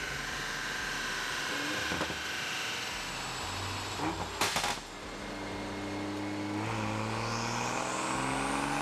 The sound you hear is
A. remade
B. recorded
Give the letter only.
B